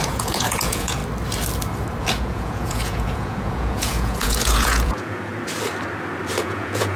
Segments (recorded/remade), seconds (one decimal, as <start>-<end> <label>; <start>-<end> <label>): 0.0-1.0 remade; 1.0-2.0 recorded; 2.0-5.3 remade; 5.3-6.4 recorded; 6.4-7.0 remade